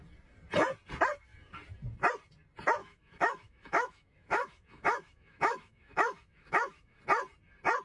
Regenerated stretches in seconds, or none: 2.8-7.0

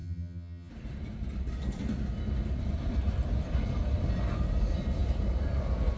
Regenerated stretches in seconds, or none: 0.0-0.7

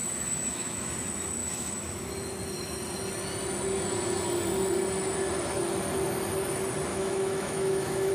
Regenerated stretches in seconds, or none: 0.0-0.9; 1.4-2.1; 6.9-8.1

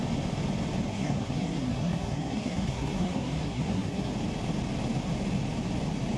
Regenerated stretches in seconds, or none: 0.9-4.1